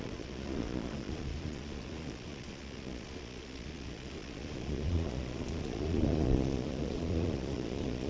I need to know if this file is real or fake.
fake